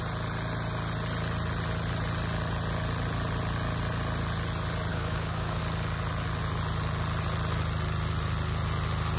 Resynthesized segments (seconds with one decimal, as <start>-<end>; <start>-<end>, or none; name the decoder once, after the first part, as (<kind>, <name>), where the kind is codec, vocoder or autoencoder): 4.9-5.6 (codec, DAC)